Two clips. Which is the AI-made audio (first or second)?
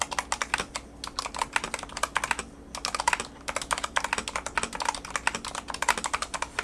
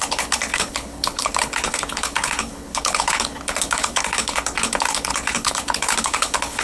second